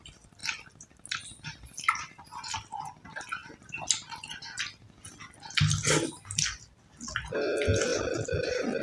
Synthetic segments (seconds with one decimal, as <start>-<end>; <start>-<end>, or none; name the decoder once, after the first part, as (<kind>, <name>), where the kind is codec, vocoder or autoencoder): 7.9-8.8 (vocoder, BigVGAN v2)